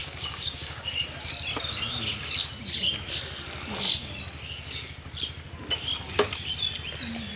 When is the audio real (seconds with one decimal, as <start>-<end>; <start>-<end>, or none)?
0.8-7.4